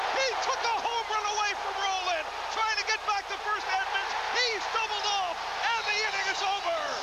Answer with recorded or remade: recorded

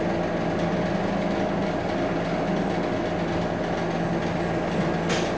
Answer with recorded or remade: recorded